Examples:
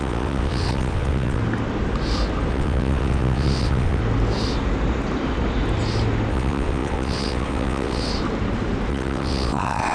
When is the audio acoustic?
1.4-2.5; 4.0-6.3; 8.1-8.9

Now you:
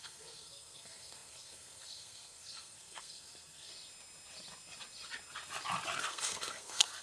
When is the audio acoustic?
3.7-6.0

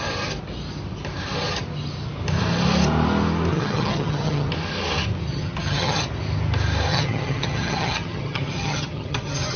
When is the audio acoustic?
0.0-3.5; 4.5-5.3; 6.0-6.9

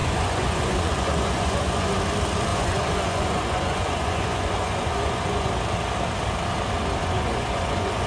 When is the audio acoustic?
2.0-2.5; 5.5-7.0

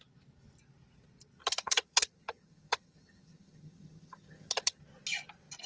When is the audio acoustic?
0.0-1.4; 4.8-5.7

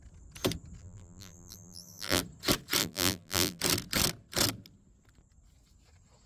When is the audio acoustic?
0.0-0.8; 2.2-2.8; 3.6-6.3

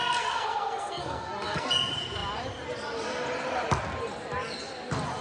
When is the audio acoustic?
1.7-5.2